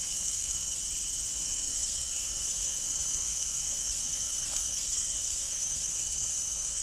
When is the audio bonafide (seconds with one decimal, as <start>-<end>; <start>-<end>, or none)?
0.8-1.3